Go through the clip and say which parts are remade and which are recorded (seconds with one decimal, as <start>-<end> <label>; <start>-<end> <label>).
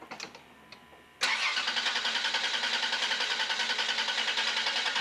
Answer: 0.0-5.0 recorded